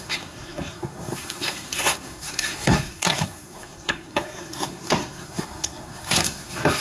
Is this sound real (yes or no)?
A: no